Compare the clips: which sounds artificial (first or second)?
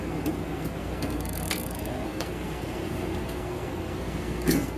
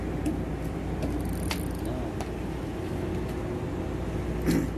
first